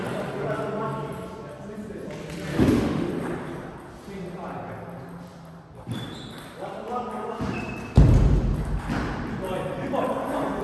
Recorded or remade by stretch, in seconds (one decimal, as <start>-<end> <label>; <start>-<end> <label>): 0.0-2.5 recorded; 2.5-3.1 remade; 3.1-10.6 recorded